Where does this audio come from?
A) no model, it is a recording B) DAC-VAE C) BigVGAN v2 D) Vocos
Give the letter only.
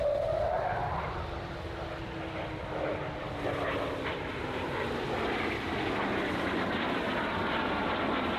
A